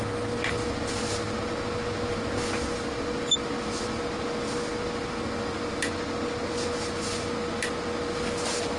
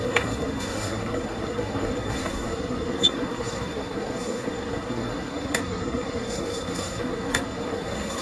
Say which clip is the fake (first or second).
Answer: second